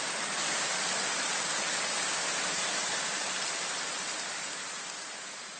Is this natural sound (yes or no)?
yes